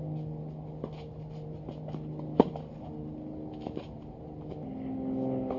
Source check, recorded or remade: recorded